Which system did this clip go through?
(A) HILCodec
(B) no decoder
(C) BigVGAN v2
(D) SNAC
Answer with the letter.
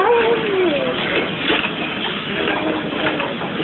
B